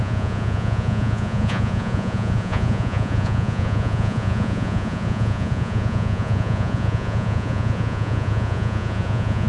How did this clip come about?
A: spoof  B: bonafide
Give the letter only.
A